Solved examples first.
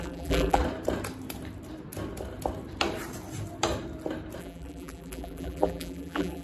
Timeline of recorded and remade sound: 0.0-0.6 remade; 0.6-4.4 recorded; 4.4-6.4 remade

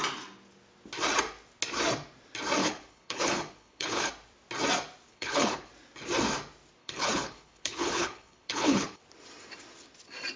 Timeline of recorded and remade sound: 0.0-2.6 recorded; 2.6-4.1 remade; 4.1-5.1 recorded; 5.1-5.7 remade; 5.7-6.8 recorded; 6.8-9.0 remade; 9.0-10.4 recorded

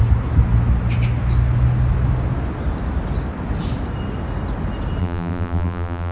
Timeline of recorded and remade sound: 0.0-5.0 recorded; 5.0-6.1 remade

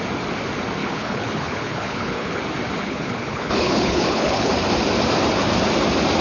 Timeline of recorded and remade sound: 0.0-0.8 recorded; 0.8-2.4 remade; 2.4-2.8 recorded; 2.8-4.5 remade; 4.5-6.2 recorded